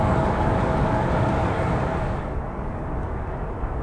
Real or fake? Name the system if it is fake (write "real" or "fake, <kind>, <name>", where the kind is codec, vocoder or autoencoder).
fake, codec, DAC